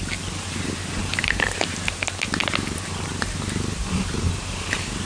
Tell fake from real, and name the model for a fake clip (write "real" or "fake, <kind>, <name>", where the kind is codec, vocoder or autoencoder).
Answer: real